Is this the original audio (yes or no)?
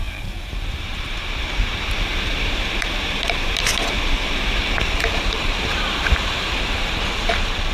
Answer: no